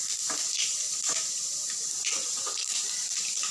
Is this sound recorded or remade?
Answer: remade